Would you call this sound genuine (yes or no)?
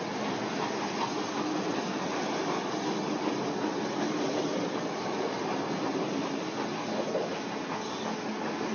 yes